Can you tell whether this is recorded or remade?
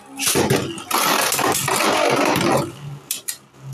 recorded